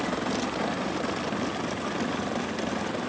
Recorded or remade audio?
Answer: recorded